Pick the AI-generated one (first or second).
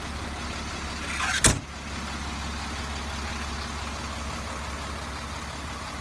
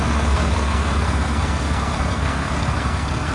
second